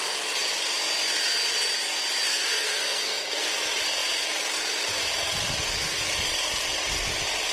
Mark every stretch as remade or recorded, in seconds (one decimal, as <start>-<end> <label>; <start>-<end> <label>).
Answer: 0.0-2.3 recorded; 2.3-3.5 remade; 3.5-7.5 recorded